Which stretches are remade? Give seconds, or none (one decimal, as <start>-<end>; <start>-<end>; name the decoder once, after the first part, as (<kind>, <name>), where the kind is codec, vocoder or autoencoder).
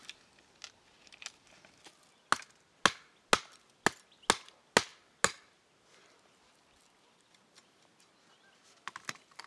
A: none